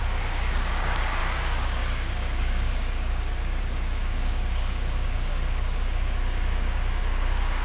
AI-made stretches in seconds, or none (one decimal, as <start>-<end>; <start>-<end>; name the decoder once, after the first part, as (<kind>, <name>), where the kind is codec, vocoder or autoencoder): 0.0-7.6 (codec, DAC)